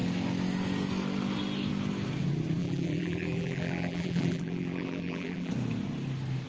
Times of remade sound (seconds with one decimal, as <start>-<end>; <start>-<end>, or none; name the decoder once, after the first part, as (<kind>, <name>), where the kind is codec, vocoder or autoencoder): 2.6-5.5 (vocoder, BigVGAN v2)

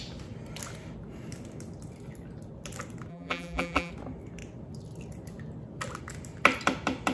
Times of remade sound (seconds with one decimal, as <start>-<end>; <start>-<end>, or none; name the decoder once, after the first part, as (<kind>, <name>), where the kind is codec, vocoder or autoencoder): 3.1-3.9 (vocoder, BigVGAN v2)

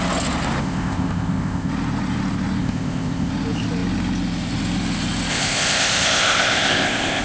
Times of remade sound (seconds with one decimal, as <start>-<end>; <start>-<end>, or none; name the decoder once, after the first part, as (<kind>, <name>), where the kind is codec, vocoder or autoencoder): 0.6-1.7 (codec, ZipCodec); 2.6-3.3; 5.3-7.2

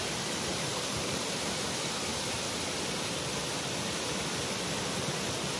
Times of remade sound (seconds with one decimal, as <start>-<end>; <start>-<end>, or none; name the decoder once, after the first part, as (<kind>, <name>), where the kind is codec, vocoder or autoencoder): 0.5-1.2 (vocoder, BigVGAN v2)